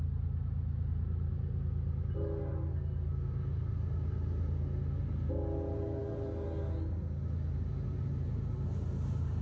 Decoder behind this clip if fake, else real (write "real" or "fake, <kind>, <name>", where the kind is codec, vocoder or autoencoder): real